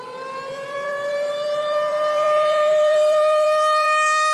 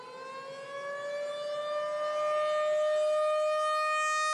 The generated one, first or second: first